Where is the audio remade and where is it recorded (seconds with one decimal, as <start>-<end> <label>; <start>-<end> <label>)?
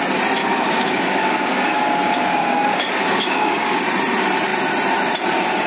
0.0-0.4 recorded; 0.4-3.8 remade; 3.8-5.7 recorded